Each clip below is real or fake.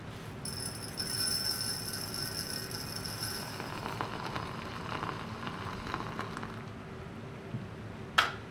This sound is real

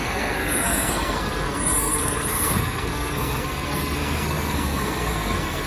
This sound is fake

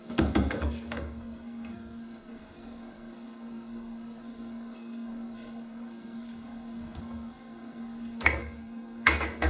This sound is fake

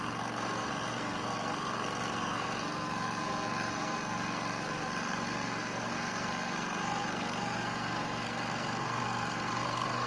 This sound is fake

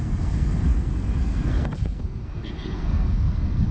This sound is fake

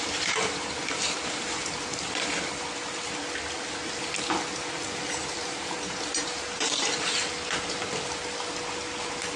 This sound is real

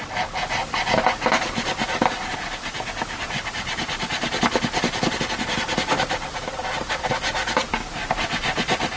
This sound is real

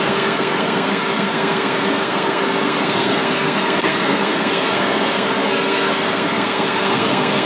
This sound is fake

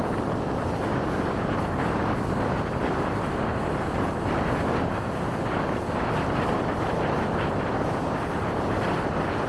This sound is real